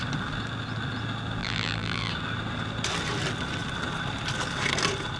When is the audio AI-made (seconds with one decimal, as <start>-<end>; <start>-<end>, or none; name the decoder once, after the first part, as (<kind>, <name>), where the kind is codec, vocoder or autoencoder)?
1.4-2.1 (vocoder, BigVGAN v2)